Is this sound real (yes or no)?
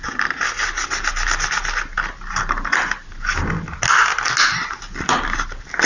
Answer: yes